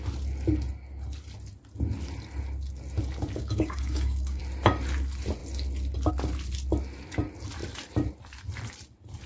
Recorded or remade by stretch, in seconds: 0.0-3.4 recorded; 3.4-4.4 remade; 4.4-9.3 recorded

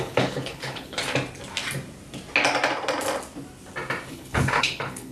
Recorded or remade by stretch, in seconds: 0.0-1.0 remade; 1.0-4.1 recorded; 4.1-5.1 remade